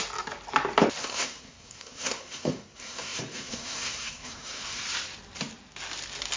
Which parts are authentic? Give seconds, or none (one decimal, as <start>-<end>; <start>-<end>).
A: 0.0-1.0; 4.8-6.4